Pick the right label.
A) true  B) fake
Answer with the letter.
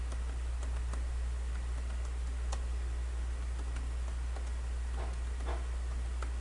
A